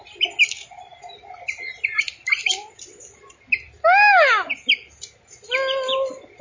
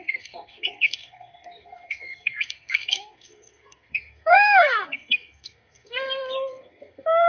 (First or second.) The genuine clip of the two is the first